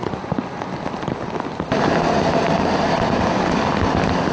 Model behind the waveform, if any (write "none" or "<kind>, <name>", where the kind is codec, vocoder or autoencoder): none